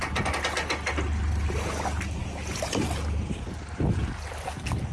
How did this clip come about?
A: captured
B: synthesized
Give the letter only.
A